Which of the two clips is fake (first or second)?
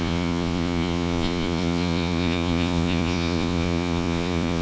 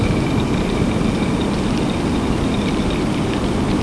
first